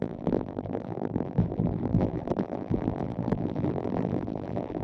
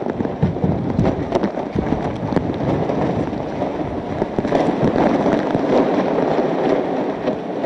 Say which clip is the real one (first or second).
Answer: second